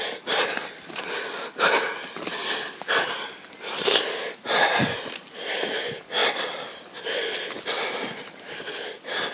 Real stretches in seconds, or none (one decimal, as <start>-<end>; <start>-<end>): 0.0-9.3